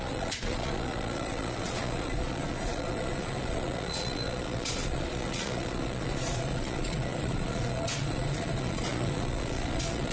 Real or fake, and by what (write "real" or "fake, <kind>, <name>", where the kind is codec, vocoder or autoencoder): fake, vocoder, Vocos